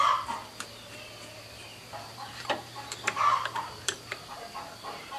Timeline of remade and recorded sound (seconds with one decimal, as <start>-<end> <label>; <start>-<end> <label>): 0.0-1.8 recorded; 1.8-4.3 remade; 4.3-5.2 recorded